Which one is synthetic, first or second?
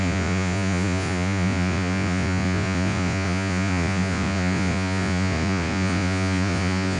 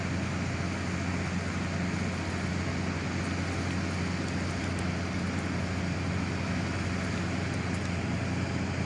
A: first